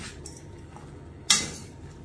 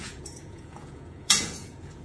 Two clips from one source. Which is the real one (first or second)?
first